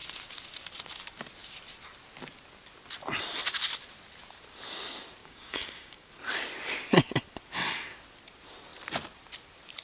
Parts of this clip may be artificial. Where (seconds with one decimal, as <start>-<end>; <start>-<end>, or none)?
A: 5.2-6.1